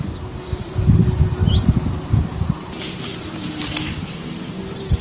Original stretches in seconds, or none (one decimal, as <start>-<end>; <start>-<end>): 0.0-5.0